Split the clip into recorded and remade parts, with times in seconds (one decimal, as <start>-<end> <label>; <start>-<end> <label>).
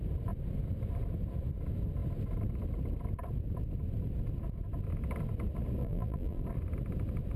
0.0-5.8 recorded; 5.8-6.4 remade; 6.4-7.4 recorded